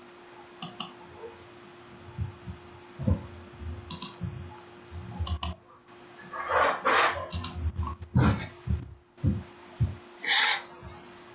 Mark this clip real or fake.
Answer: real